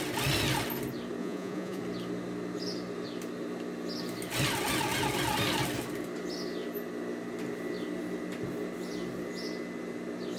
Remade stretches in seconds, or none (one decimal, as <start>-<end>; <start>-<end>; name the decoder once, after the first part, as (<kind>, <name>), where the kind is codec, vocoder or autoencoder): 1.2-1.8 (vocoder, Vocos)